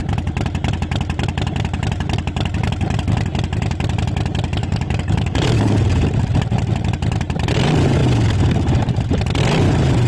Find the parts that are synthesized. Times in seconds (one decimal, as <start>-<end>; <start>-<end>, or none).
4.6-5.8